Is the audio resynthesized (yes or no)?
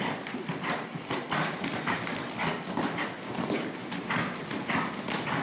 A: no